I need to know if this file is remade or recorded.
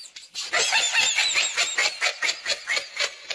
recorded